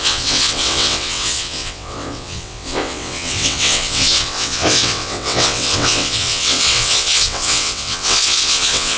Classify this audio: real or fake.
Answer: fake